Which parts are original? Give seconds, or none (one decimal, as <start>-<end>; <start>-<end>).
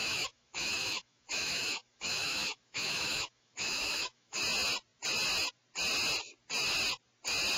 4.4-7.6